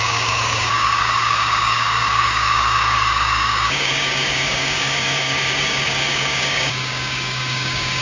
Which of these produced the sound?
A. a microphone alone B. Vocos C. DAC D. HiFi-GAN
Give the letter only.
C